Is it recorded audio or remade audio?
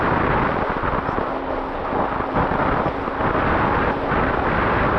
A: recorded